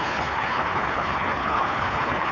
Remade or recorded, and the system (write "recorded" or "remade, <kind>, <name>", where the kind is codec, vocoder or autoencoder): remade, codec, HILCodec